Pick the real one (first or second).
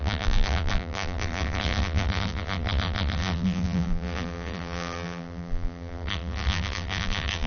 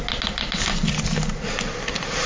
second